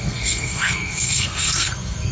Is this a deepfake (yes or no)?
yes